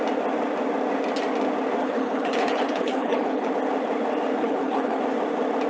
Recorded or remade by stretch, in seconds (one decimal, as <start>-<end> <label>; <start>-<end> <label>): 0.0-1.8 recorded; 1.8-3.5 remade; 3.5-4.4 recorded; 4.4-5.0 remade; 5.0-5.7 recorded